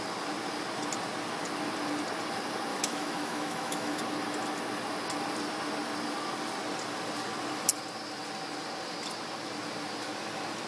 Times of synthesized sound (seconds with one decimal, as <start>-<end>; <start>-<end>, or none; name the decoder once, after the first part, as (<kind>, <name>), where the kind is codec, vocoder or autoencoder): 2.7-4.0 (autoencoder, DAC-VAE)